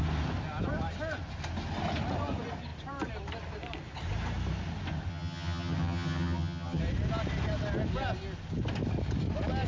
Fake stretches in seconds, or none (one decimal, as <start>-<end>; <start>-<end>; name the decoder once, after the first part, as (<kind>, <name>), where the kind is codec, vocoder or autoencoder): 5.1-6.8 (vocoder, HiFi-GAN)